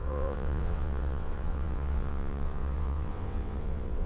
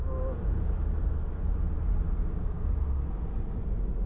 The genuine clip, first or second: second